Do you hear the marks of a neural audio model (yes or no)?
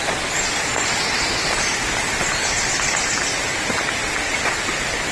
no